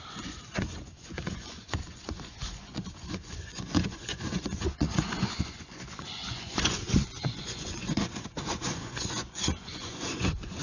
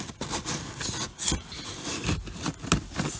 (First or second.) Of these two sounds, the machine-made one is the first